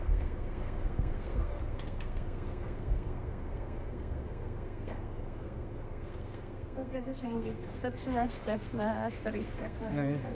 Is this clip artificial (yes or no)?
yes